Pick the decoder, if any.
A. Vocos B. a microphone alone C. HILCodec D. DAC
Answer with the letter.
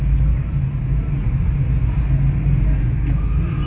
B